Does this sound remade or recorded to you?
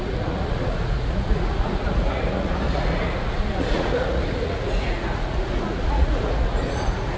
remade